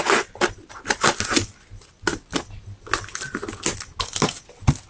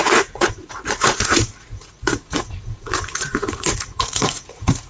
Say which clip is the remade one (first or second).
second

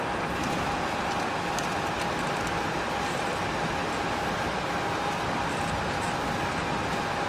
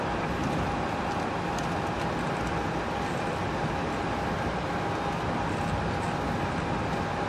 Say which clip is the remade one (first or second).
first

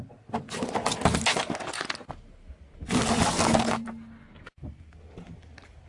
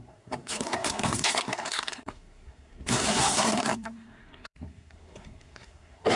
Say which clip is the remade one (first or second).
second